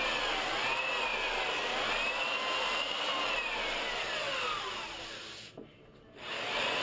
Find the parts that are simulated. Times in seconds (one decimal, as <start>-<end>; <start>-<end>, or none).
none